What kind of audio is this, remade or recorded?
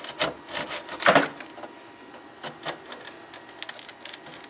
recorded